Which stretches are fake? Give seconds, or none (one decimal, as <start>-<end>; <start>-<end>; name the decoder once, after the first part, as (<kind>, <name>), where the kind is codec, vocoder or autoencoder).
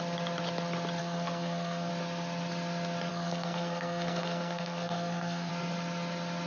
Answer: 1.0-1.9 (codec, SNAC); 3.1-5.5